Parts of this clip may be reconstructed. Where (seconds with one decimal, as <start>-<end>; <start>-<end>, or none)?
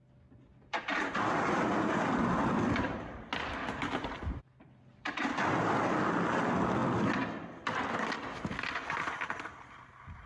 none